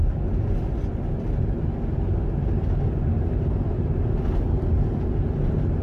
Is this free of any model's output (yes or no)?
yes